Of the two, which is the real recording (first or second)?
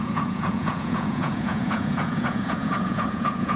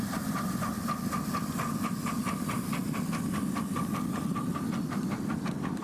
second